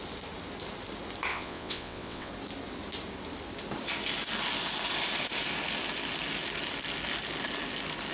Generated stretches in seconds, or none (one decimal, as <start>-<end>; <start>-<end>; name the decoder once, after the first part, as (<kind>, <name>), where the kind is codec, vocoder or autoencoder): 1.3-2.3 (vocoder, WaveNeXt)